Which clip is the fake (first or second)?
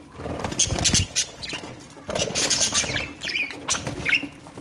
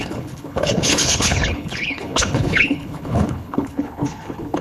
second